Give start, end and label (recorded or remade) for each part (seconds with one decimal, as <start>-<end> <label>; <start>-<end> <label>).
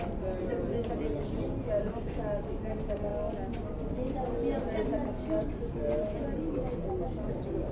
0.0-7.7 recorded